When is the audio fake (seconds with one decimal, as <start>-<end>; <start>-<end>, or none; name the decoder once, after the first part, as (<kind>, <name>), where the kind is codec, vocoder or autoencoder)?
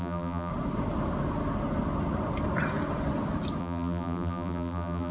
0.0-0.5 (vocoder, BigVGAN v2); 3.6-5.1